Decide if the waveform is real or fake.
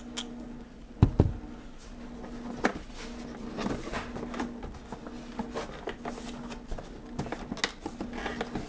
real